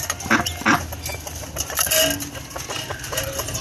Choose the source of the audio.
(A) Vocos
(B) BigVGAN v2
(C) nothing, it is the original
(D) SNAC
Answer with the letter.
C